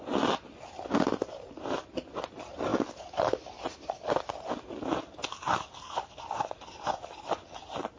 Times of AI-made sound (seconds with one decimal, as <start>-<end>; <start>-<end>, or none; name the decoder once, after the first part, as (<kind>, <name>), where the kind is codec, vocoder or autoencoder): none